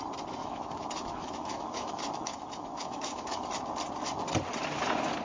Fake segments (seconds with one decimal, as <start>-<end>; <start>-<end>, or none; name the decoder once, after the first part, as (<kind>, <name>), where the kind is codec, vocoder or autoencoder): 0.4-3.5 (autoencoder, DAC-VAE)